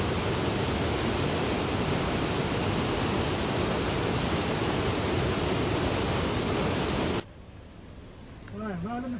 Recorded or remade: recorded